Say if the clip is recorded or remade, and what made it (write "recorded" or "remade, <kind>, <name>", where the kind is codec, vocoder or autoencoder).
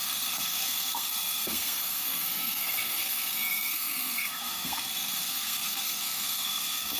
remade, codec, SNAC